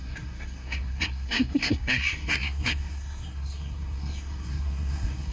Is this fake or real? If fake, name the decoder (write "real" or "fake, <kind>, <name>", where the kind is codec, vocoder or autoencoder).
fake, codec, SNAC